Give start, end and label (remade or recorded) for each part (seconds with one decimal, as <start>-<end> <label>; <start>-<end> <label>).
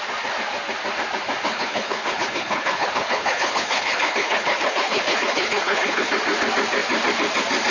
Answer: 0.0-1.5 recorded; 1.5-6.1 remade; 6.1-7.7 recorded